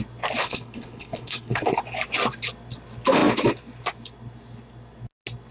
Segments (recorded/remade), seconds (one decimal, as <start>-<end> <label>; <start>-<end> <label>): 0.0-0.4 recorded; 0.4-1.8 remade; 1.8-5.5 recorded